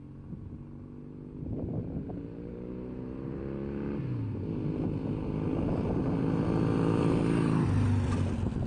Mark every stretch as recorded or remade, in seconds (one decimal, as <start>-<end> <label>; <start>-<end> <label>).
0.0-1.8 recorded; 1.8-3.4 remade; 3.4-8.7 recorded